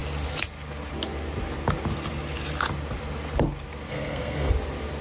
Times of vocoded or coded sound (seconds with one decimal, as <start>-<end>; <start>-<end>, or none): 3.9-4.5